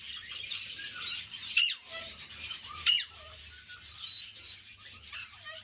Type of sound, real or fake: fake